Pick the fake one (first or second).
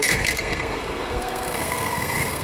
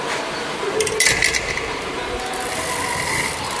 first